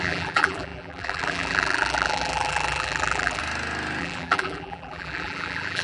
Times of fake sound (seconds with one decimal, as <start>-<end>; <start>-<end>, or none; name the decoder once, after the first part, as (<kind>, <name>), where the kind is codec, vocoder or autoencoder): 0.0-3.4 (vocoder, BigVGAN v2); 4.0-5.8